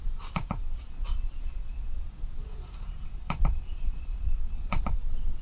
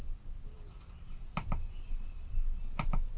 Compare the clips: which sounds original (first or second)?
second